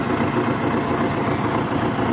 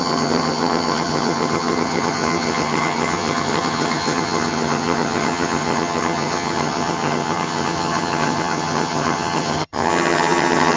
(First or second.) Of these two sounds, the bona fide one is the first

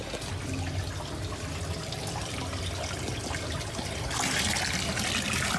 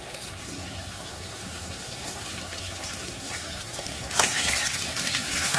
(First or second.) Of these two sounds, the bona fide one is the first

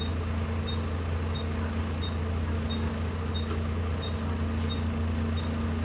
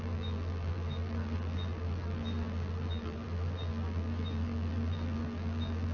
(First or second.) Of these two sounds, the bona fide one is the first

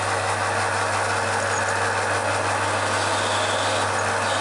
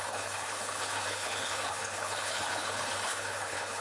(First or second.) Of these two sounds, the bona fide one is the first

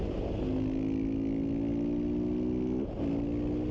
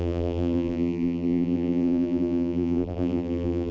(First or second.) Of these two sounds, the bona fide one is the first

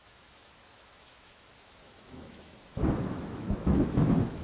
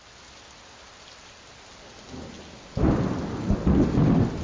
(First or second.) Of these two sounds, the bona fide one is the second